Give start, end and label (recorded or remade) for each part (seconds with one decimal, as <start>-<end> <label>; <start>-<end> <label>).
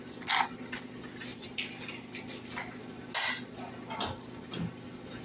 0.0-5.2 recorded